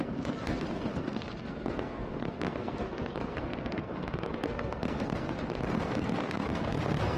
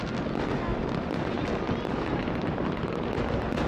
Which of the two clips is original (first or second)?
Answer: second